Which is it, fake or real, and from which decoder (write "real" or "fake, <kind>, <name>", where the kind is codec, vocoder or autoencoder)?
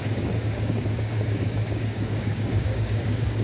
fake, codec, DAC